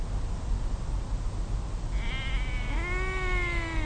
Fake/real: real